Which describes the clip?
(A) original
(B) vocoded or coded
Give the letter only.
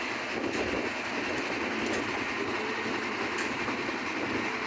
A